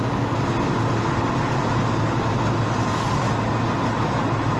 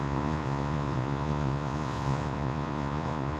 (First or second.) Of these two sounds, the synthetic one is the second